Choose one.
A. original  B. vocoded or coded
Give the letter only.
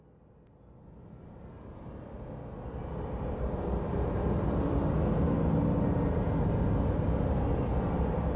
A